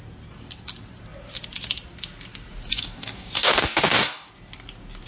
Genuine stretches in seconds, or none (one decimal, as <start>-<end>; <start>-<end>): 0.0-2.7; 4.3-5.1